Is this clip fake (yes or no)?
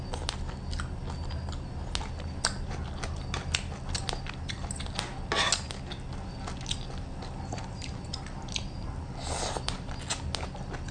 no